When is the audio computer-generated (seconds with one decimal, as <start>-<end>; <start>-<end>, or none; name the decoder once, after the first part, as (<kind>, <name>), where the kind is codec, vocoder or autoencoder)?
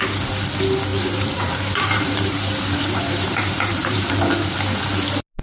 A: 0.9-4.1 (vocoder, BigVGAN v2)